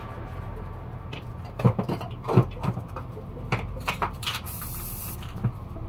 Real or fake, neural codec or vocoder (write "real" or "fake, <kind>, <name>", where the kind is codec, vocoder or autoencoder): fake, vocoder, BigVGAN v2